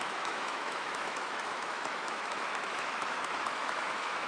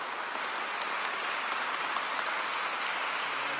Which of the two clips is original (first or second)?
second